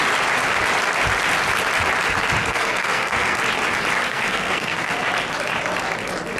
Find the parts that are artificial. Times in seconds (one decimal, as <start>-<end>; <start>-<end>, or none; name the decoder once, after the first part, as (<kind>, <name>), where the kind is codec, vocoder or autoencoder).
2.4-3.4 (codec, SNAC); 4.1-5.1